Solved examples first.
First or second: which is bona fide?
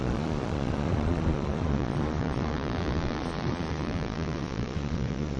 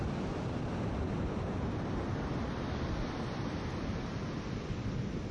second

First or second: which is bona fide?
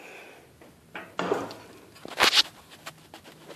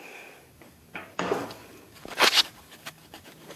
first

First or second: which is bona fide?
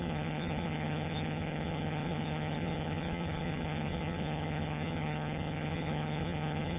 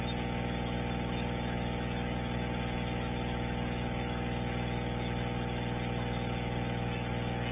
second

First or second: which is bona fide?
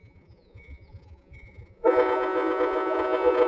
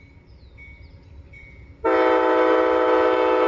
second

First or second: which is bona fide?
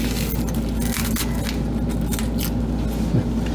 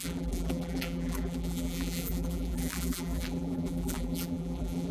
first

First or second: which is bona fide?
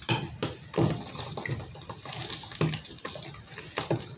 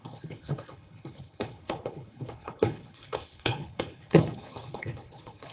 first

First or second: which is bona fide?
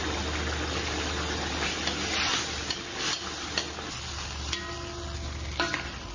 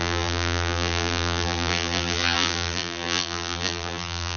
first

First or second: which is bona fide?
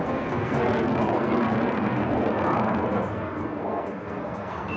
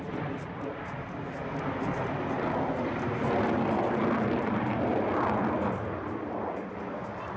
second